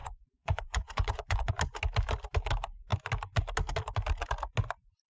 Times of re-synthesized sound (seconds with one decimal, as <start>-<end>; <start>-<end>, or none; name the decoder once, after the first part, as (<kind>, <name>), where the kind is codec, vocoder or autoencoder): 0.0-1.5 (vocoder, Vocos)